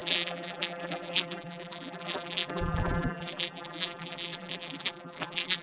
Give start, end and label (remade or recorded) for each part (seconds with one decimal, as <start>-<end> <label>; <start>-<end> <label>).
0.0-5.6 remade